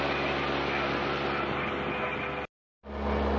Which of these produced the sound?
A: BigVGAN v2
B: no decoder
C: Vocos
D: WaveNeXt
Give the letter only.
B